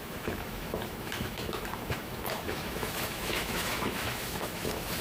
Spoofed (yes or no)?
yes